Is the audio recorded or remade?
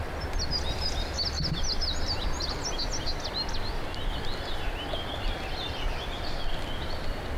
recorded